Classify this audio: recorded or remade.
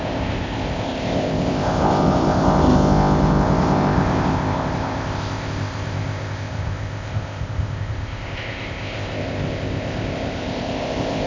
remade